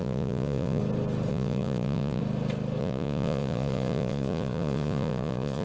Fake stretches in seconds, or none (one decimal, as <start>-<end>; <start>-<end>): 0.0-0.8; 1.3-2.2; 2.8-5.6